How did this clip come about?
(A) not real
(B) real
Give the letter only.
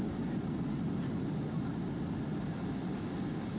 B